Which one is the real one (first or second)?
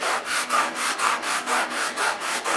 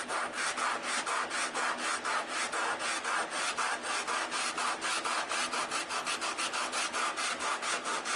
second